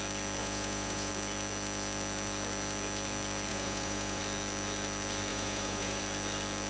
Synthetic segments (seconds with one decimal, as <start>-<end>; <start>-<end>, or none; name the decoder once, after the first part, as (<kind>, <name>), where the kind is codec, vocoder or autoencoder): 0.4-1.1 (vocoder, Vocos); 3.5-4.2; 5.3-6.0